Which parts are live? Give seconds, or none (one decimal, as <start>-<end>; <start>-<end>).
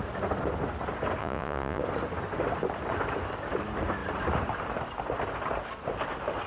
0.0-1.2; 1.8-6.5